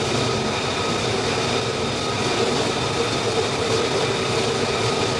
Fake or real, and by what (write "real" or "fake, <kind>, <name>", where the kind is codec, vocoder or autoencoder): real